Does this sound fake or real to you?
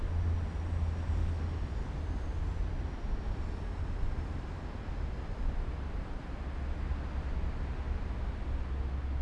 real